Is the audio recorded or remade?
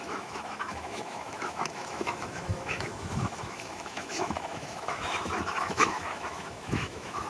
remade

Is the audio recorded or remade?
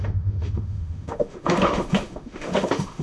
remade